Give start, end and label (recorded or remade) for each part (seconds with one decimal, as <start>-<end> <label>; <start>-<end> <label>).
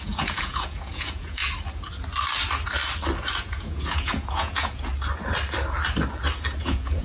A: 0.0-1.4 remade; 1.4-3.4 recorded; 3.4-4.9 remade; 4.9-6.6 recorded; 6.6-7.0 remade